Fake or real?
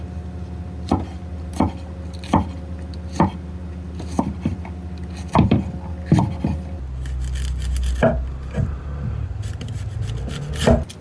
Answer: real